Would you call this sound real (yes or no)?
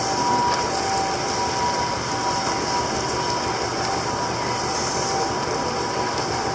yes